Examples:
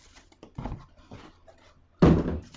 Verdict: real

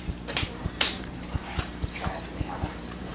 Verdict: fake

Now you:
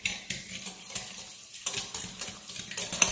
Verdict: real